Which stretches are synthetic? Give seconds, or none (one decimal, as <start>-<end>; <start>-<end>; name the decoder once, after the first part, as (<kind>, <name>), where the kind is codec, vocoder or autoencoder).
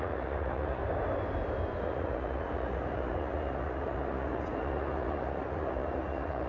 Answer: 0.0-0.8 (vocoder, Vocos); 1.8-6.5